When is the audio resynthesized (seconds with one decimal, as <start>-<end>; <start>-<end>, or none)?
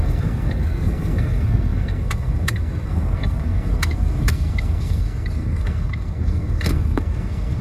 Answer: 0.0-7.6